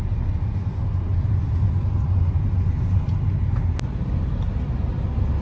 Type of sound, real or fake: real